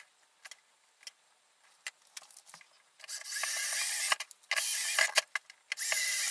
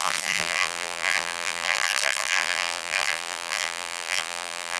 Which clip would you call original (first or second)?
first